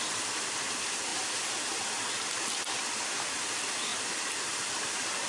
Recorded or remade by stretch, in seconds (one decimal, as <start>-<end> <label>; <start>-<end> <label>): 0.0-3.9 recorded; 3.9-5.3 remade